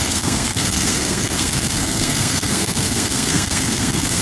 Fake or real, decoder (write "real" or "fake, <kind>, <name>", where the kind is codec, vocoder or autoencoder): fake, codec, SNAC